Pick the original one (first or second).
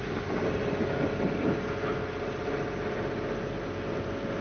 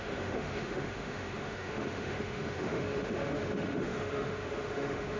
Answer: first